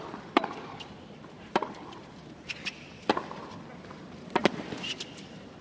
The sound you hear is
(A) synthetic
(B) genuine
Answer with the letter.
A